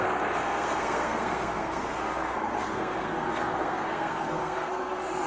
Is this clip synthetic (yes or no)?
yes